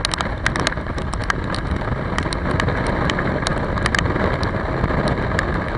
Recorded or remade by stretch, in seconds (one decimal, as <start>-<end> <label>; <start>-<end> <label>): 0.0-5.8 recorded